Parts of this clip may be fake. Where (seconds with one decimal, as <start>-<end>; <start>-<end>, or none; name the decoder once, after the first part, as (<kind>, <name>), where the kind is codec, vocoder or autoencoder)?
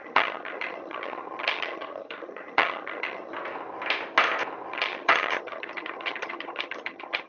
0.0-3.3 (vocoder, HiFi-GAN); 4.7-7.3